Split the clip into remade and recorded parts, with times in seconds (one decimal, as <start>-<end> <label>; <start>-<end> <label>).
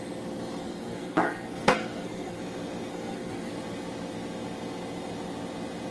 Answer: 0.0-0.6 recorded; 0.6-2.4 remade; 2.4-2.9 recorded; 2.9-3.5 remade; 3.5-5.9 recorded